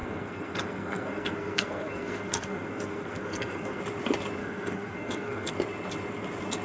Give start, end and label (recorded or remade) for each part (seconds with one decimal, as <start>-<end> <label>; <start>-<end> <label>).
0.0-3.8 remade; 3.8-4.4 recorded; 4.4-5.5 remade; 5.5-6.6 recorded

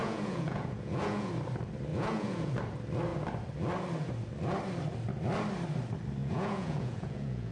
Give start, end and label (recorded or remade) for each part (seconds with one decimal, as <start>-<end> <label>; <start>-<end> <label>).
0.0-1.3 remade; 1.3-1.9 recorded; 1.9-2.5 remade; 2.5-6.2 recorded; 6.2-7.5 remade